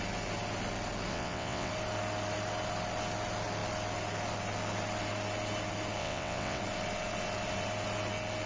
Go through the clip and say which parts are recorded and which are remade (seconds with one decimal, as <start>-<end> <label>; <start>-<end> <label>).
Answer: 0.0-1.1 recorded; 1.1-1.7 remade; 1.7-6.0 recorded; 6.0-6.6 remade; 6.6-8.5 recorded